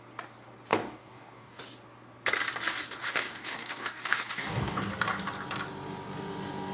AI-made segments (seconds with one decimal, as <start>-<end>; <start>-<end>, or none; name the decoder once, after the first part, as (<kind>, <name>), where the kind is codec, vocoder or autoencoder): 0.7-1.6 (codec, DAC); 3.0-4.9